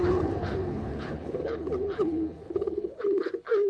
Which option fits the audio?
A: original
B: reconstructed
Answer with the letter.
B